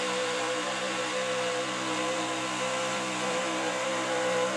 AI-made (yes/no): yes